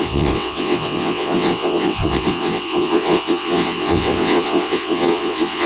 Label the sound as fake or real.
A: fake